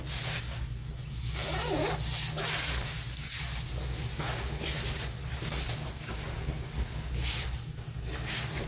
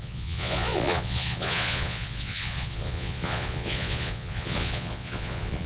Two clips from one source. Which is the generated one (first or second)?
second